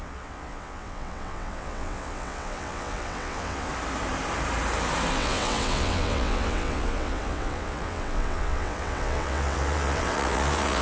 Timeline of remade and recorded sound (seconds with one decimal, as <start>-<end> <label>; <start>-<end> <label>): 0.0-3.7 remade; 3.7-5.1 recorded; 5.1-10.8 remade